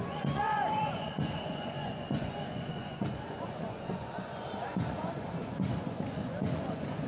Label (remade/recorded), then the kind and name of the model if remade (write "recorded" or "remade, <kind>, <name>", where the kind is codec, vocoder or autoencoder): remade, vocoder, Vocos